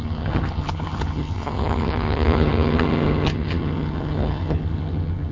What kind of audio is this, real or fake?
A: fake